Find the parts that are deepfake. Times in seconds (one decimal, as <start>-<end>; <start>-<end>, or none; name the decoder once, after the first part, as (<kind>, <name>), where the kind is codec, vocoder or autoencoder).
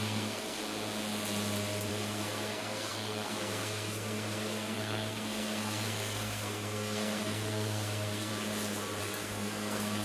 0.0-0.6 (codec, SNAC); 1.9-8.3; 9.0-10.0